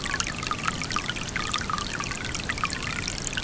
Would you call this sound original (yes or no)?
yes